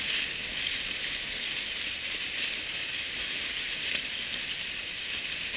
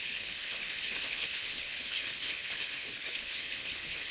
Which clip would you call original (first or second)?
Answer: first